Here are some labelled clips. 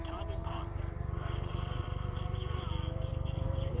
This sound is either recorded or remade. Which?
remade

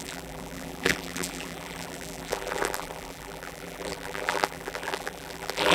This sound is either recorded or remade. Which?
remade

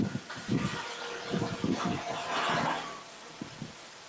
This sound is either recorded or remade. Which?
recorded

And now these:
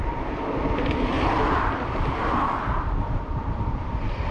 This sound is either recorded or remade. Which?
remade